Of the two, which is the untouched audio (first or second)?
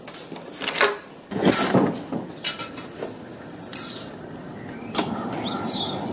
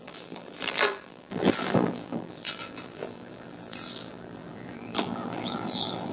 first